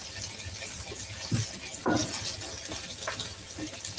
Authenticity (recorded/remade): recorded